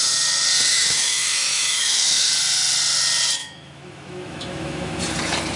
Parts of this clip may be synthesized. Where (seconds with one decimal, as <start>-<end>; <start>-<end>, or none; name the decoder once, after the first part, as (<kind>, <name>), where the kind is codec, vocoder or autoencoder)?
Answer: 0.7-2.3 (autoencoder, DAC-VAE); 3.4-5.0